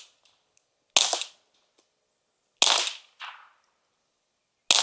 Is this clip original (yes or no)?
yes